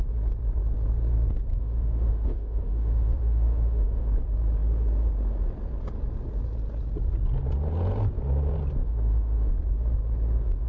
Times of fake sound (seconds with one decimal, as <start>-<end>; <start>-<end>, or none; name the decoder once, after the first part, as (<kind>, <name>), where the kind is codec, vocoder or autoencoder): 1.5-4.1 (autoencoder, DAC-VAE); 8.8-9.5